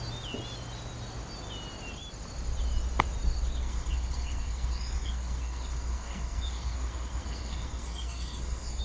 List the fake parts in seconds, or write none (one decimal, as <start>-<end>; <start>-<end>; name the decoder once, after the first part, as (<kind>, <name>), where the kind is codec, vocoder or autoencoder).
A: 3.6-8.8 (codec, SNAC)

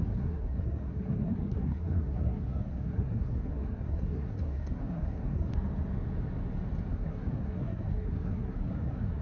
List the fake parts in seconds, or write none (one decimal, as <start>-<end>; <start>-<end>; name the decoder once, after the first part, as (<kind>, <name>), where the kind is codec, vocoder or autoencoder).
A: 0.0-5.5 (codec, SNAC); 6.9-9.2